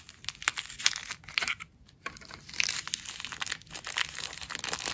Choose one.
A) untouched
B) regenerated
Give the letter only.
A